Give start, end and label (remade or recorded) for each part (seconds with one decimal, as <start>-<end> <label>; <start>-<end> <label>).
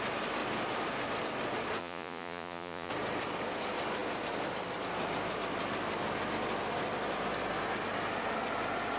0.0-1.8 recorded; 1.8-2.9 remade; 2.9-9.0 recorded